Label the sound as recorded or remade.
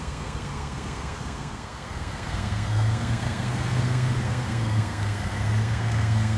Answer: remade